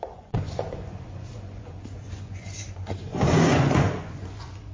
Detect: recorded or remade remade